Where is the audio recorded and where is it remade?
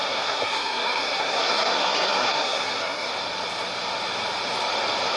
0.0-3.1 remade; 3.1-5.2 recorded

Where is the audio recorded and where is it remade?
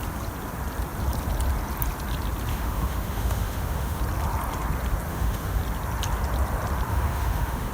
0.0-2.5 recorded; 2.5-4.0 remade; 4.0-5.1 recorded; 5.1-5.6 remade; 5.6-6.9 recorded; 6.9-7.7 remade